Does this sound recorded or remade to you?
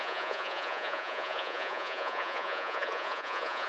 remade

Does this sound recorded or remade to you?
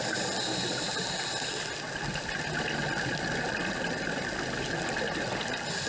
recorded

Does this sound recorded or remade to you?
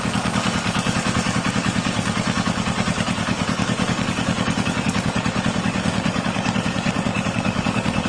remade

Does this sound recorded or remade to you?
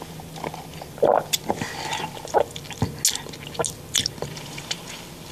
recorded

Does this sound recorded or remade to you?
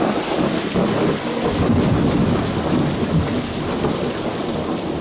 recorded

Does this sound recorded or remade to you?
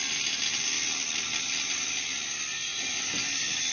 recorded